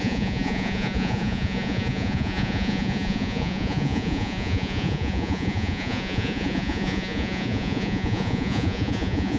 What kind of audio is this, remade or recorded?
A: remade